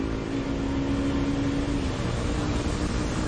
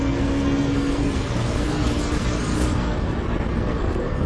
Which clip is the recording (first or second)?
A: first